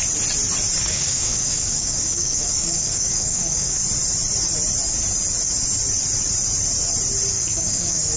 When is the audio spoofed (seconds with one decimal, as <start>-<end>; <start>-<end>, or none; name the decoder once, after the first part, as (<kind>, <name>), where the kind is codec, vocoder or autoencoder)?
0.8-3.8 (codec, DAC); 7.3-8.2